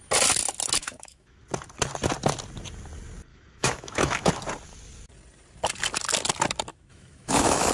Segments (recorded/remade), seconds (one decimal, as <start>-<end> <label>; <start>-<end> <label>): 0.0-0.8 recorded; 0.8-1.4 remade; 1.4-3.3 recorded; 3.3-4.3 remade; 4.3-6.7 recorded; 6.7-7.7 remade